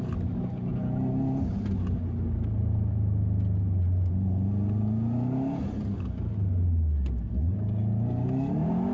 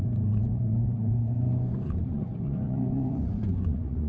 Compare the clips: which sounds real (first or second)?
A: first